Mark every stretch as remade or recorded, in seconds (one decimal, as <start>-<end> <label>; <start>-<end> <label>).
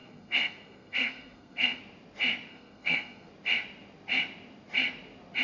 0.0-1.8 remade; 1.8-2.5 recorded; 2.5-3.3 remade; 3.3-5.4 recorded